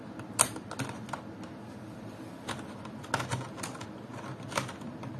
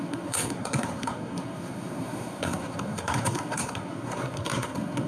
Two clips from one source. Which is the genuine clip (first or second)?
first